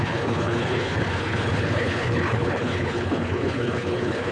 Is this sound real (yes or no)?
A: no